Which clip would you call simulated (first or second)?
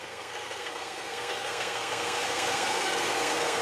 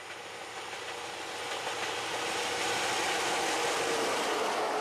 first